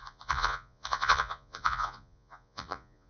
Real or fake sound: fake